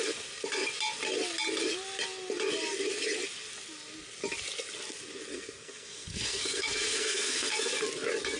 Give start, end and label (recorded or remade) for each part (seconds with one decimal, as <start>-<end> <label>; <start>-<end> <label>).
0.0-5.3 recorded; 5.3-7.7 remade; 7.7-8.4 recorded